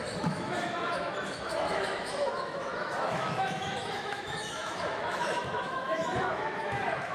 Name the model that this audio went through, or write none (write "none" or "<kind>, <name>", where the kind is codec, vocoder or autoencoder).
autoencoder, DAC-VAE